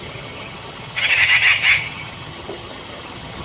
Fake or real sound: fake